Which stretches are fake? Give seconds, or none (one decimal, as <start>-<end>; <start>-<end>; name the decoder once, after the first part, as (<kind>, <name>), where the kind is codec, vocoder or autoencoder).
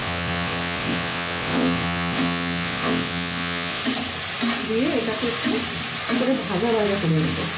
0.0-3.8 (vocoder, WaveNeXt)